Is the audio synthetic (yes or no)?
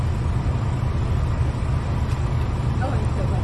no